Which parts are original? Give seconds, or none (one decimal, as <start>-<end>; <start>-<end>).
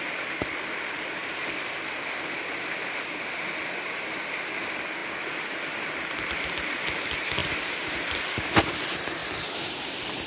7.4-7.9